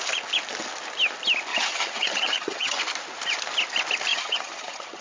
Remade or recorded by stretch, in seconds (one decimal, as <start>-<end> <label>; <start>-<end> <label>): 0.0-1.5 recorded; 1.5-2.8 remade; 2.8-4.1 recorded; 4.1-5.0 remade